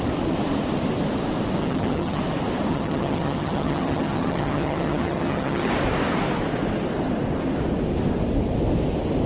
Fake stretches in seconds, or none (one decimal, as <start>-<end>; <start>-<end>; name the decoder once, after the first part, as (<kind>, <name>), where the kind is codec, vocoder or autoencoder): 1.6-2.2 (vocoder, HiFi-GAN); 2.7-5.7